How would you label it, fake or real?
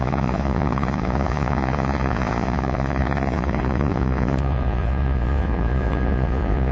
fake